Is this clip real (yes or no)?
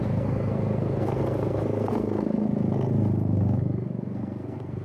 no